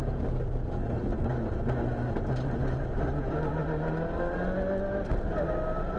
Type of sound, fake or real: real